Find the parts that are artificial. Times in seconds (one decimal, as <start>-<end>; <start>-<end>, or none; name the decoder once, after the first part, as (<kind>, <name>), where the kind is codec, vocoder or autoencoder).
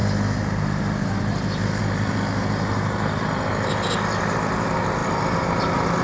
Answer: none